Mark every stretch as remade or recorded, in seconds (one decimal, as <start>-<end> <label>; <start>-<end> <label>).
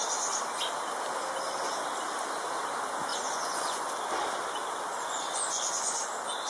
0.0-3.1 recorded; 3.1-3.9 remade; 3.9-4.9 recorded; 4.9-6.1 remade; 6.1-6.5 recorded